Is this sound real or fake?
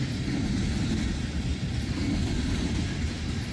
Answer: real